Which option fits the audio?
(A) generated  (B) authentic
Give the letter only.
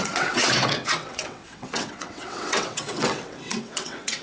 A